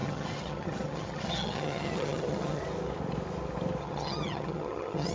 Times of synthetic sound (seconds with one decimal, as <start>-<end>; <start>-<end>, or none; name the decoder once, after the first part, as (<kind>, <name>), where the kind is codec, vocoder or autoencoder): 0.0-2.6 (vocoder, HiFi-GAN); 3.8-5.1

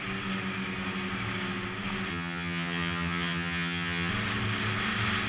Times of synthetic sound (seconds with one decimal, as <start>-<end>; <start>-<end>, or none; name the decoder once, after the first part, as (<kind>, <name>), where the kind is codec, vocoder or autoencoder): 2.1-4.1 (vocoder, HiFi-GAN)

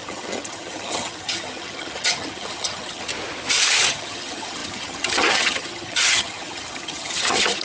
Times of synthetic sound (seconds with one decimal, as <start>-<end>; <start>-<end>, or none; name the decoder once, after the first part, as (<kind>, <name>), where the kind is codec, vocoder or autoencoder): 0.0-3.1 (vocoder, HiFi-GAN); 3.9-7.6

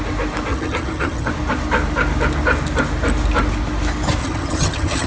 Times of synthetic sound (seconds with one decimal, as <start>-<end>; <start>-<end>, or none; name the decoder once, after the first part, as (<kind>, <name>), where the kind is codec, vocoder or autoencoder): 0.5-1.3 (vocoder, HiFi-GAN); 4.2-5.1

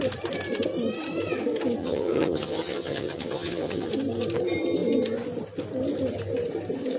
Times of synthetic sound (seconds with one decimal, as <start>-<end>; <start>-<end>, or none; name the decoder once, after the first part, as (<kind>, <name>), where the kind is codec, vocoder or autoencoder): 1.8-3.9 (vocoder, HiFi-GAN)

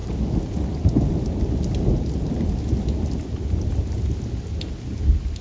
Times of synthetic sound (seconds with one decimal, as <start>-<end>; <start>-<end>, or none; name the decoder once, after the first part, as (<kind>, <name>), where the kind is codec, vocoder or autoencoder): none

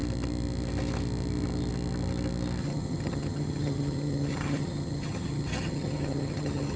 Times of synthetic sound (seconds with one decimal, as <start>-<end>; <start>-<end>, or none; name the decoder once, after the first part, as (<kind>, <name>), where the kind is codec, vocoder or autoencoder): 2.6-6.8 (vocoder, HiFi-GAN)

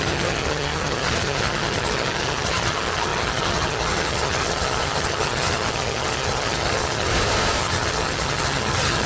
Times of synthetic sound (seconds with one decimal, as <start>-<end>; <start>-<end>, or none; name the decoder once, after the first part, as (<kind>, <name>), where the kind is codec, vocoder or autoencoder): 0.0-7.1 (vocoder, HiFi-GAN); 7.6-9.1